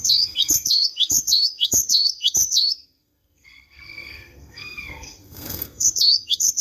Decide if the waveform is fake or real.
fake